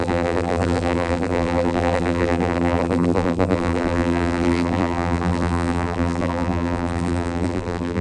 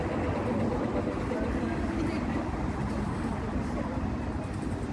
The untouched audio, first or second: second